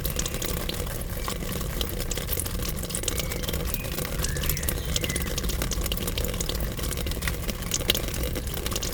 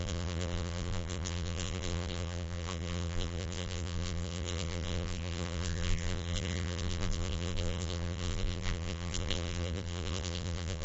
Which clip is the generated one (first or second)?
second